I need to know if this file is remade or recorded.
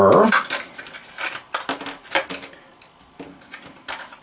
recorded